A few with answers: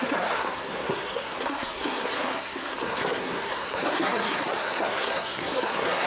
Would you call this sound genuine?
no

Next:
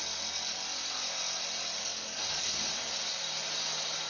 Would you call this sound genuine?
yes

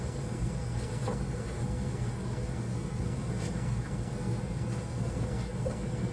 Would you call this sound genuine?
no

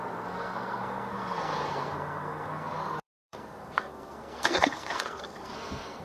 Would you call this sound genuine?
no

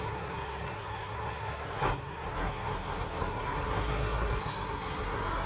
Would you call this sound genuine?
no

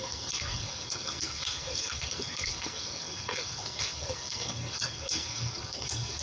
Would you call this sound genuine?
no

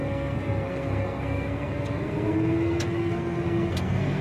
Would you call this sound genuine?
no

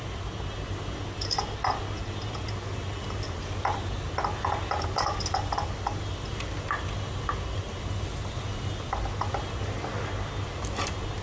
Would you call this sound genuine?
yes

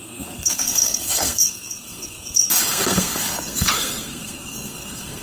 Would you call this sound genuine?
no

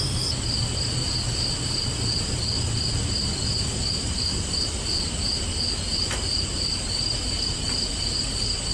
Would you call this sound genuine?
yes